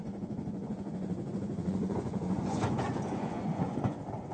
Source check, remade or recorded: remade